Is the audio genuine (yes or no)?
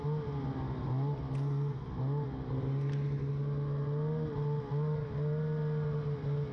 yes